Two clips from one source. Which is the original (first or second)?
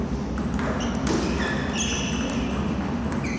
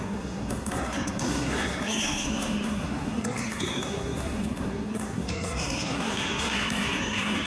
first